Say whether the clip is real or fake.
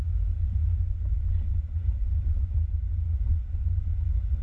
real